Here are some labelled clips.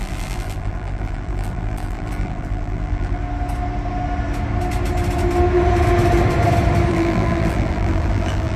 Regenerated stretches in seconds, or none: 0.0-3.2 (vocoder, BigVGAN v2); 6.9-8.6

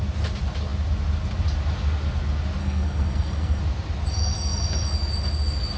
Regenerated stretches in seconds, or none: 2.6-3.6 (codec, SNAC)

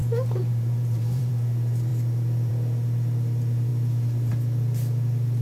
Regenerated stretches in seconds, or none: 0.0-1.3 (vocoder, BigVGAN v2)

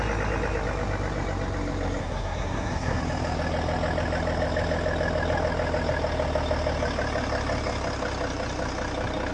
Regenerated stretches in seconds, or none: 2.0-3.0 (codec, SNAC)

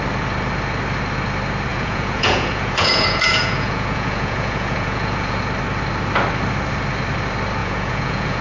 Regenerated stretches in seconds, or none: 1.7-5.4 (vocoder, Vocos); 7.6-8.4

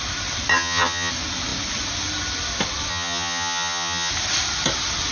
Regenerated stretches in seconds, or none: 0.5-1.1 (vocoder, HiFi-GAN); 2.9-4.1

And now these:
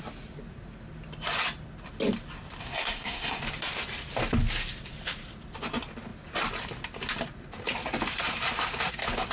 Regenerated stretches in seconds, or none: 2.6-3.4 (codec, SNAC)

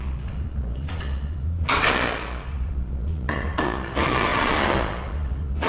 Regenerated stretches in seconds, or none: 0.0-5.7 (vocoder, Vocos)